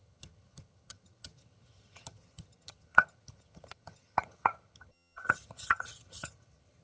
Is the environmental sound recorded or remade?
remade